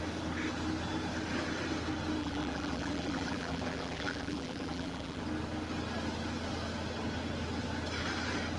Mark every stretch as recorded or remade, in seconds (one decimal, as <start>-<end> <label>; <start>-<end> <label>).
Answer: 0.0-2.2 recorded; 2.2-5.2 remade; 5.2-8.6 recorded